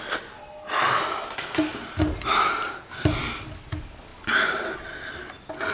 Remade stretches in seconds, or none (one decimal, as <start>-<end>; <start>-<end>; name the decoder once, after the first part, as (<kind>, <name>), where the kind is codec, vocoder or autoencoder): none